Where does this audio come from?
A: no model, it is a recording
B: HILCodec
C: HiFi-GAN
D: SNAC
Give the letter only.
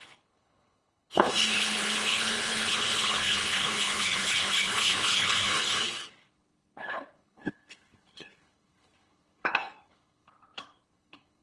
B